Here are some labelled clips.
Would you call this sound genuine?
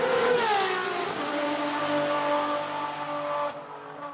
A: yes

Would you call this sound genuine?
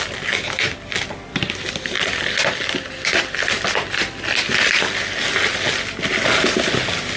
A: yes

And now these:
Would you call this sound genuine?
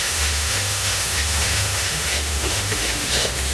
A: no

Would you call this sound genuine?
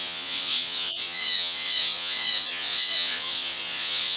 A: no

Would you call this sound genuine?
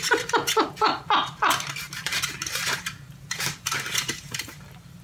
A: no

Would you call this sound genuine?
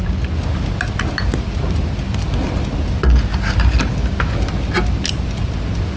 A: yes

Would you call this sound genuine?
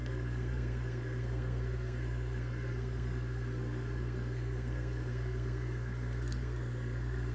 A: no